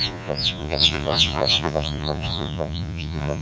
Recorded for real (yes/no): no